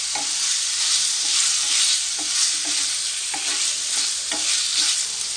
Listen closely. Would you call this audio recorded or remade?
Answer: recorded